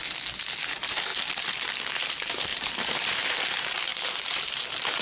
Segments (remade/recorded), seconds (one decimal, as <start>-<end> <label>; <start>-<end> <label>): 0.0-0.7 recorded; 0.7-1.1 remade; 1.1-1.9 recorded; 1.9-5.0 remade